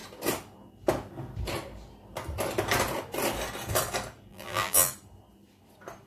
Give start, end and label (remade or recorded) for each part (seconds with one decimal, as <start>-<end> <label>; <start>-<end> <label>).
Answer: 0.0-4.3 recorded; 4.3-4.9 remade; 4.9-6.1 recorded